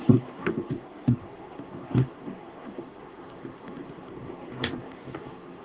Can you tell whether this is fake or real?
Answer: fake